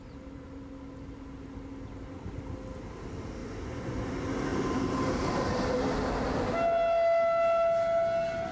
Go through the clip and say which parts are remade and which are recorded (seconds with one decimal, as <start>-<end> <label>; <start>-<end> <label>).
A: 0.0-3.4 recorded; 3.4-4.1 remade; 4.1-8.5 recorded